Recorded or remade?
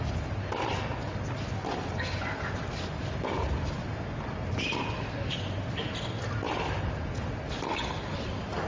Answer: recorded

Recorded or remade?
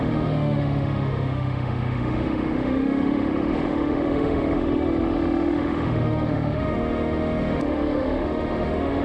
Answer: remade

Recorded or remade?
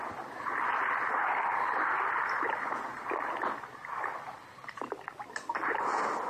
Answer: recorded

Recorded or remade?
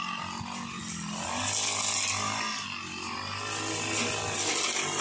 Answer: recorded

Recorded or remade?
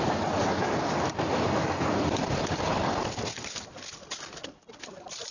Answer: recorded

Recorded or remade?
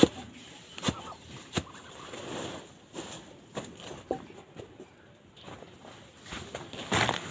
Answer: recorded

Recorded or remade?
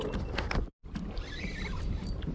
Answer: recorded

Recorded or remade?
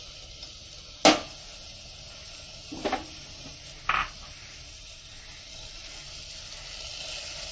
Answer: recorded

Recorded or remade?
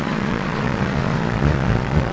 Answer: remade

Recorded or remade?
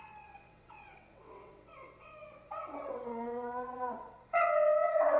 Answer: remade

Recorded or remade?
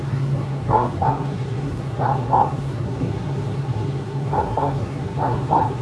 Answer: remade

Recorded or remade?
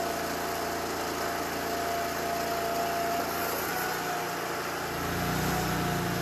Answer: recorded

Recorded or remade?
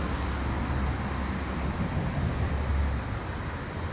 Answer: recorded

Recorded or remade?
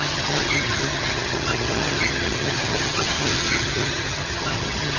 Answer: remade